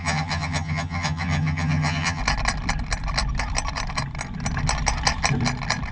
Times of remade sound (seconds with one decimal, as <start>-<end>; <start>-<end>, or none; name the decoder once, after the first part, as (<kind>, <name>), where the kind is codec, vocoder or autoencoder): 0.0-2.2 (vocoder, HiFi-GAN)